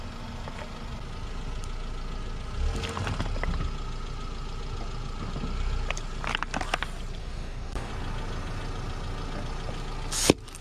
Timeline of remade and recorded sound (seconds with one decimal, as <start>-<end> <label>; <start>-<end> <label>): 0.0-7.2 recorded; 7.2-7.9 remade; 7.9-10.6 recorded